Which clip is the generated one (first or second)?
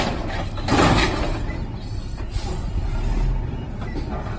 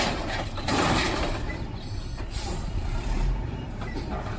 second